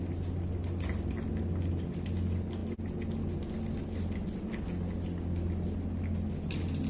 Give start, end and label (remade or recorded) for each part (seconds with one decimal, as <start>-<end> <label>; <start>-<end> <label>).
0.0-6.9 recorded